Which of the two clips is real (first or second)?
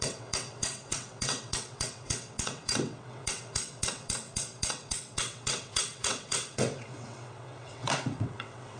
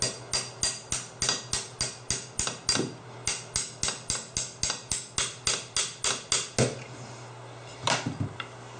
second